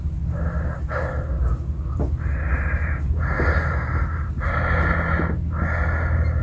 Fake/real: real